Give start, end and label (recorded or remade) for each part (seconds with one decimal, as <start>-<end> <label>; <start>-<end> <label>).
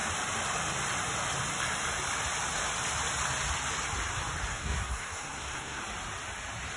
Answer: 0.0-4.5 recorded; 4.5-5.8 remade; 5.8-6.8 recorded